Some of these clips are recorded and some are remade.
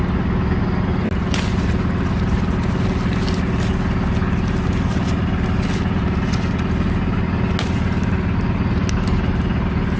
recorded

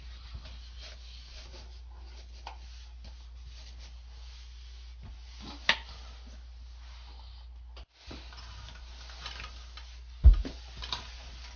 recorded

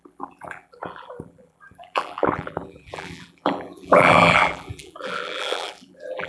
remade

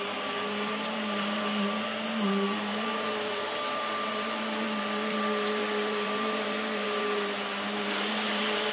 remade